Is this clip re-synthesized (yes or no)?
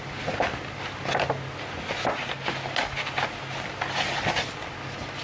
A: no